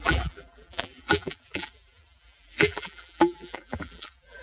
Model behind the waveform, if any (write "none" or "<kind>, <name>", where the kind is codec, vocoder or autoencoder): vocoder, BigVGAN v2